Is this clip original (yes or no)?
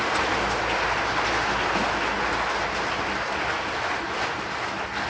yes